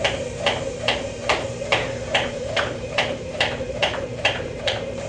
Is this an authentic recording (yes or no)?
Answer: no